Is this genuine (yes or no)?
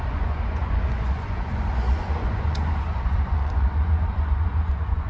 no